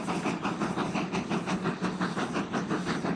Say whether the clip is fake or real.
real